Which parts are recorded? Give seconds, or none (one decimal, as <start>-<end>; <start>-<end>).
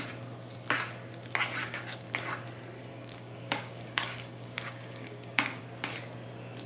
0.0-1.6; 2.1-2.9; 5.6-6.7